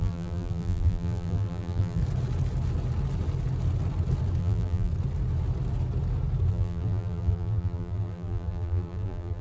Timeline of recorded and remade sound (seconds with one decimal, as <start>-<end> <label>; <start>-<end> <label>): 0.0-2.0 remade; 2.0-4.4 recorded; 4.4-4.9 remade; 4.9-6.5 recorded; 6.5-9.4 remade